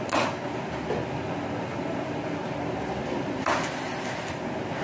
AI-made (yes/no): no